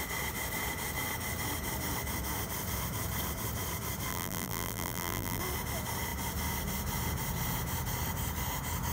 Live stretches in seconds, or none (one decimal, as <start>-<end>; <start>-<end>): 0.0-4.1; 5.4-8.9